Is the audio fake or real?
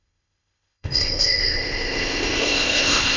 fake